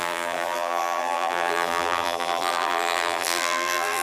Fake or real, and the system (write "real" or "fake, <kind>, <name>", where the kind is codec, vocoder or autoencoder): fake, vocoder, BigVGAN v2